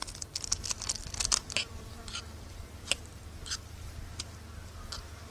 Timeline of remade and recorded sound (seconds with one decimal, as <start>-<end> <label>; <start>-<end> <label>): 0.0-3.2 remade; 3.2-5.3 recorded